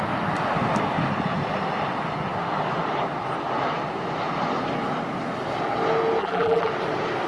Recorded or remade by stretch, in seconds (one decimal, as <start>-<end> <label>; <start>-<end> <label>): 0.0-6.2 recorded; 6.2-6.7 remade; 6.7-7.3 recorded

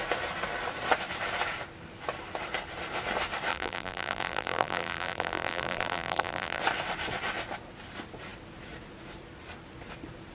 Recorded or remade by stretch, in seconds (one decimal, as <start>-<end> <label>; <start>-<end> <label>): 0.0-3.5 recorded; 3.5-6.6 remade; 6.6-10.3 recorded

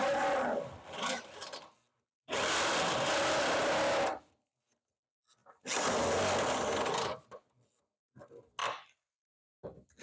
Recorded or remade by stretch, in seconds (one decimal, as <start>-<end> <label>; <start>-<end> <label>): 0.0-1.9 recorded; 1.9-4.5 remade; 4.5-8.6 recorded; 8.6-10.0 remade

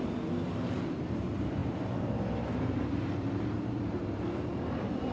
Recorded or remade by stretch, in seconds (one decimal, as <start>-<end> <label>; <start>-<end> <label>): 0.0-1.6 recorded; 1.6-5.1 remade

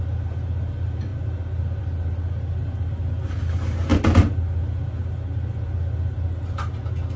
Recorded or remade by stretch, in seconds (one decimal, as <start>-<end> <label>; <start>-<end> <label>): 0.0-7.2 recorded

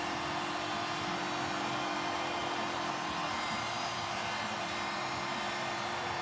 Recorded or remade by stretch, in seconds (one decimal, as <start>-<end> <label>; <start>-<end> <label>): 0.0-2.4 recorded; 2.4-6.2 remade